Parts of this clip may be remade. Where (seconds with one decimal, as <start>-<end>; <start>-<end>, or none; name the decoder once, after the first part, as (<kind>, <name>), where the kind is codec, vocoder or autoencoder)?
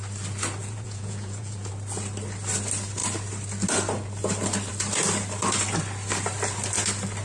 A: 0.6-1.7 (vocoder, Vocos)